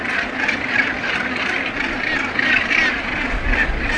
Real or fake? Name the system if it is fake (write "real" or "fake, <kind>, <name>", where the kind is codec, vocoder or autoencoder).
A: real